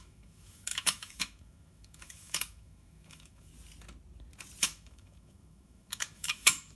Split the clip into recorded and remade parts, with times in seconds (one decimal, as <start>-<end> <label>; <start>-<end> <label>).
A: 0.0-3.5 remade; 3.5-4.6 recorded; 4.6-6.8 remade